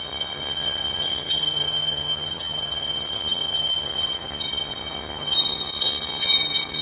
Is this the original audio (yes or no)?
no